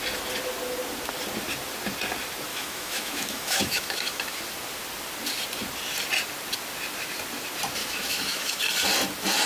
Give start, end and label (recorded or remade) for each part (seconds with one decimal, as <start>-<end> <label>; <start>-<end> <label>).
0.0-2.5 recorded; 2.5-4.4 remade; 4.4-7.8 recorded; 7.8-8.6 remade; 8.6-9.5 recorded